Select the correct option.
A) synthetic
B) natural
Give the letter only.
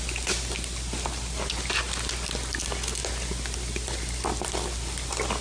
B